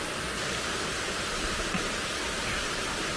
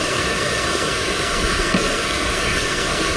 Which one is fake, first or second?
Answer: second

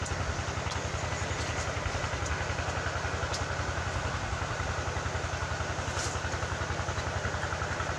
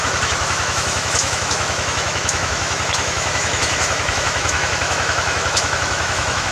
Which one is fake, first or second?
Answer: second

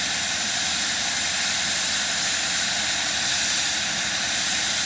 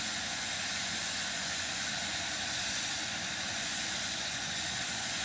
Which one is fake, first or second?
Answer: second